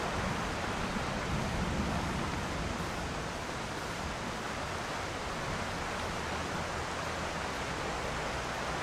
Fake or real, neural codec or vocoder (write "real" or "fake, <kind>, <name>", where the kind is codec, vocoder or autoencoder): real